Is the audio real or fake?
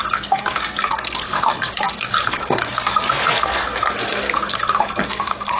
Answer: fake